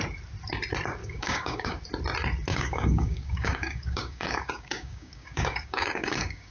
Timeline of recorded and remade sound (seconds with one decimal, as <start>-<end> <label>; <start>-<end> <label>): 0.0-1.0 recorded; 1.0-1.8 remade; 1.8-2.5 recorded; 2.5-6.5 remade